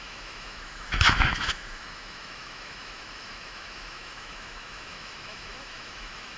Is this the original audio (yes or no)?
no